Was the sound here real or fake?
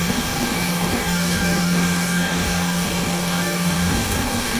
fake